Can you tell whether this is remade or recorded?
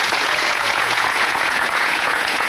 remade